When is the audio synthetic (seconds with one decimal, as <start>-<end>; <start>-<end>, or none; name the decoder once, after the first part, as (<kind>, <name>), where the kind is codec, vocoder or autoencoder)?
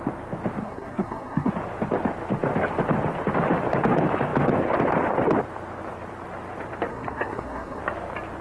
0.6-1.5 (codec, SNAC); 6.9-7.8